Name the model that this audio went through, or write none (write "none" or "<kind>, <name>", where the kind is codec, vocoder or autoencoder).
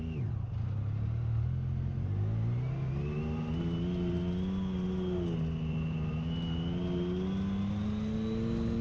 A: none